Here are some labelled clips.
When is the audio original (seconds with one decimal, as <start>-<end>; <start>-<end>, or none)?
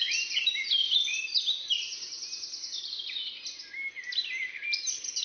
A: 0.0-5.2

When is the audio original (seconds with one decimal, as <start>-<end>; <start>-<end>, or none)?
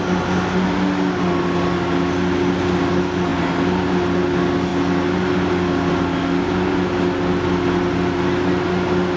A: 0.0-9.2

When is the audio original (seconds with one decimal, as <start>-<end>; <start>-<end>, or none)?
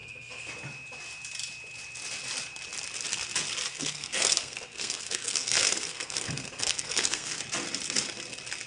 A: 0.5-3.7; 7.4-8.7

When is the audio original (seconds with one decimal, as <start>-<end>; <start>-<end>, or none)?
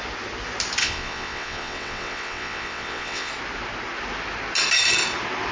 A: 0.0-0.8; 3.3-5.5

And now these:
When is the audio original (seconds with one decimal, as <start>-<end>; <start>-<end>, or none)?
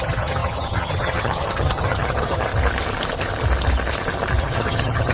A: 2.5-4.4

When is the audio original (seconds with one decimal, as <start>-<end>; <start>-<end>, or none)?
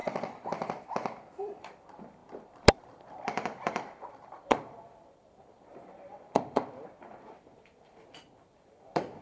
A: 0.0-1.6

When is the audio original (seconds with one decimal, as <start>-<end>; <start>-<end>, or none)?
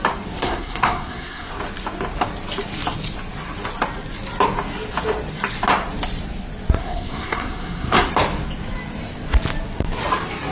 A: 0.0-0.4; 1.5-6.8; 8.1-10.5